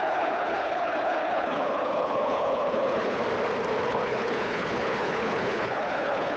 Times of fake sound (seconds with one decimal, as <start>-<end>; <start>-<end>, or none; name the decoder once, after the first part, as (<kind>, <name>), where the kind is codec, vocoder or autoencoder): 0.0-3.2 (codec, HILCodec); 3.8-6.4